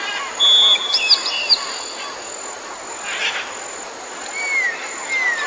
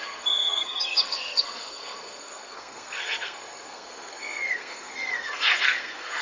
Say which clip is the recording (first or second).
first